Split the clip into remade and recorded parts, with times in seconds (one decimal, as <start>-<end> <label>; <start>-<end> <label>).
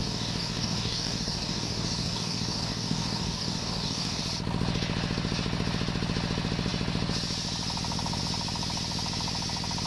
0.0-4.2 remade; 4.2-9.9 recorded